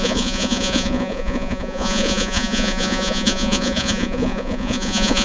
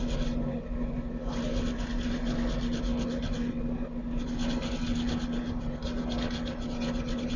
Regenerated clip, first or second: first